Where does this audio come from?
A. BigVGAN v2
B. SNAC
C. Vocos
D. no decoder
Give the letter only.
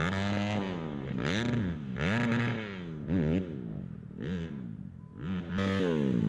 D